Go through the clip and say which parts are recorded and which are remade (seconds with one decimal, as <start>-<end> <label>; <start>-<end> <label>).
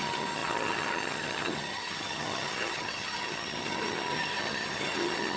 0.0-5.4 remade